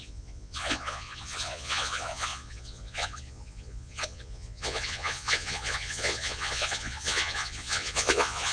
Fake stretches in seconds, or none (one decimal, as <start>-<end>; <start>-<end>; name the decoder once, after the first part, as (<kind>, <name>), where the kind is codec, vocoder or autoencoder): 0.0-8.5 (vocoder, Vocos)